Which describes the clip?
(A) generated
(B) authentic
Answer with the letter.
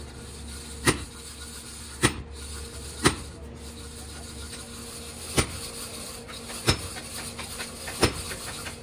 B